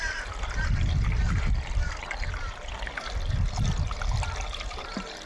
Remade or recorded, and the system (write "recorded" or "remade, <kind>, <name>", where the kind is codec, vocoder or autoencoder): recorded